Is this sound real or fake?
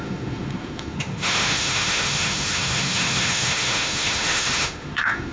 fake